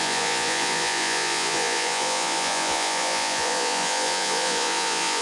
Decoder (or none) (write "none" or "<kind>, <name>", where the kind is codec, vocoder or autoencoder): vocoder, Vocos